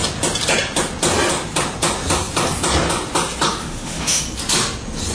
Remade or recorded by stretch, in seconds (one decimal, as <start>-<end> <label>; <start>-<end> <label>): 0.0-3.5 recorded; 3.5-4.2 remade; 4.2-5.1 recorded